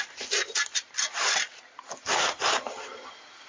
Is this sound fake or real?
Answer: fake